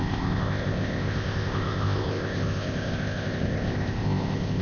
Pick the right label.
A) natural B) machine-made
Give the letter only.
B